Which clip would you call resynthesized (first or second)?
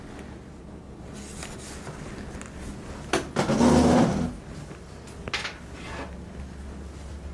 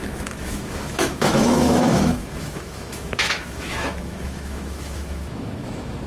second